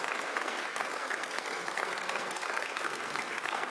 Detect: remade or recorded remade